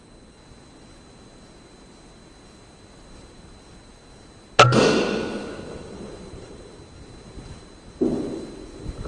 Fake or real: real